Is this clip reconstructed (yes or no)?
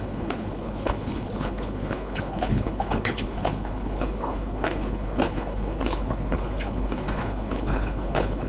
yes